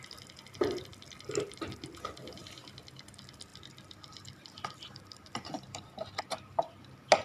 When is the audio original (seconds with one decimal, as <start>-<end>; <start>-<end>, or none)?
0.0-3.5; 6.2-7.2